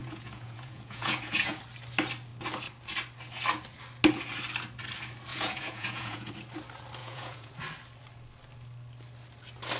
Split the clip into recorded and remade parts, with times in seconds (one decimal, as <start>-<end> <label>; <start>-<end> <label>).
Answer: 0.0-1.6 remade; 1.6-5.3 recorded; 5.3-6.3 remade; 6.3-7.0 recorded; 7.0-7.5 remade; 7.5-9.8 recorded